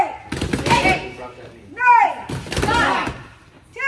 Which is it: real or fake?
real